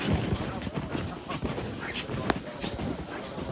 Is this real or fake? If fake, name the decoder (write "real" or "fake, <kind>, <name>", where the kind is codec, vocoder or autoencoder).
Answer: real